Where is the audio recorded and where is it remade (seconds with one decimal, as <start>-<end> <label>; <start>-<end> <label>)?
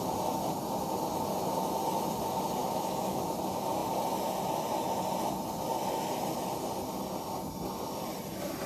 0.0-2.6 recorded; 2.6-3.2 remade; 3.2-8.7 recorded